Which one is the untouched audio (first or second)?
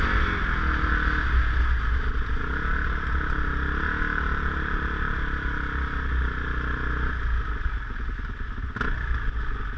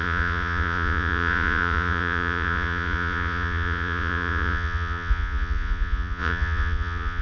first